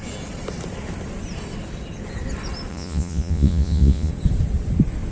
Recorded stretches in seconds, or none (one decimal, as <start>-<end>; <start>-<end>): 0.0-2.7; 4.1-5.1